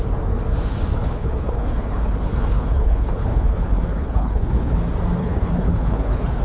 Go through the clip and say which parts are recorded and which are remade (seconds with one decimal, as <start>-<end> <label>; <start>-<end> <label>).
0.0-0.9 recorded; 0.9-4.7 remade; 4.7-5.2 recorded; 5.2-6.4 remade